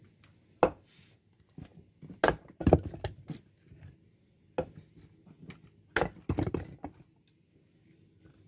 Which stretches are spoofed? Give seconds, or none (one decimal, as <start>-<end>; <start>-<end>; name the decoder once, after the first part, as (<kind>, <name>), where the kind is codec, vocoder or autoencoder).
none